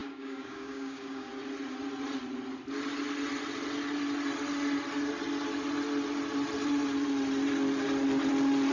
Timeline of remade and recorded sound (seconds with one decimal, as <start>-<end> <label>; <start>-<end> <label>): 0.0-1.3 remade; 1.3-8.7 recorded